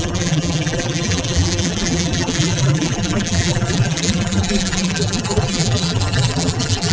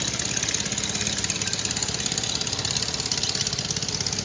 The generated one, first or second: first